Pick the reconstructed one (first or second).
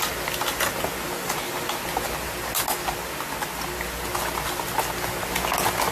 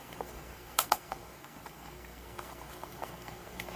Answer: second